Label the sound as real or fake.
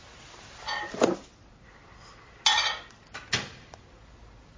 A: real